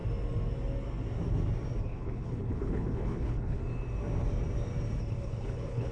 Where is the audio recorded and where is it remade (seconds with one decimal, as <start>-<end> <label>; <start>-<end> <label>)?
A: 0.0-1.8 recorded; 1.8-3.6 remade; 3.6-5.0 recorded; 5.0-5.9 remade